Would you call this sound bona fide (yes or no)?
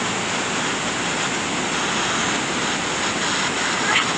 yes